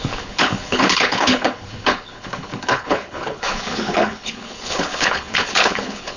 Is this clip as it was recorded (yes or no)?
no